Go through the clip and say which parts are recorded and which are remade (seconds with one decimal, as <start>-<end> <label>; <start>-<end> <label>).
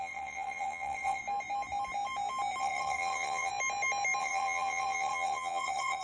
0.0-1.2 remade; 1.2-2.6 recorded; 2.6-3.5 remade; 3.5-4.2 recorded; 4.2-6.0 remade